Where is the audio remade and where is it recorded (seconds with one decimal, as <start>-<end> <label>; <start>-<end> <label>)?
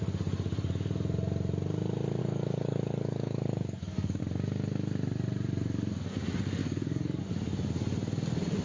0.0-2.2 recorded; 2.2-4.2 remade; 4.2-6.6 recorded; 6.6-7.2 remade; 7.2-8.6 recorded